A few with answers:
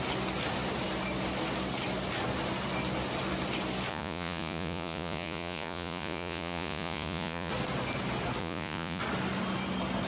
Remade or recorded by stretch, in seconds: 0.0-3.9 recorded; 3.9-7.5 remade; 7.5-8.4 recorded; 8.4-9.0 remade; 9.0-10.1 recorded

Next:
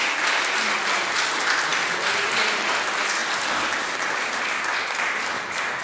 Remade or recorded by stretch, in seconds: 0.0-5.8 recorded

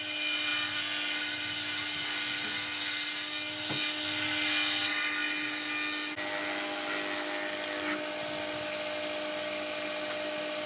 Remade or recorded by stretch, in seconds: 0.0-10.7 recorded

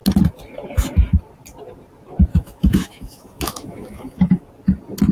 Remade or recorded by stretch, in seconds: 0.0-2.3 recorded; 2.3-4.4 remade; 4.4-5.1 recorded

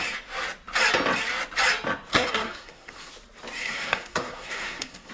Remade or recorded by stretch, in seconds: 0.0-2.1 recorded; 2.1-3.1 remade; 3.1-3.6 recorded; 3.6-5.1 remade

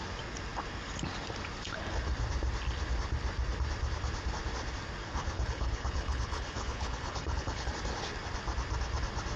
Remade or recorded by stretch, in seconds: 0.0-5.0 recorded; 5.0-7.7 remade; 7.7-9.4 recorded

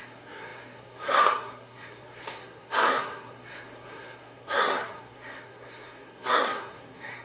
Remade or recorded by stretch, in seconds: 0.0-7.2 remade